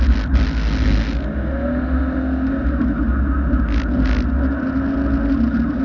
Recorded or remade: recorded